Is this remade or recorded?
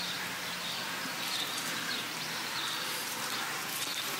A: recorded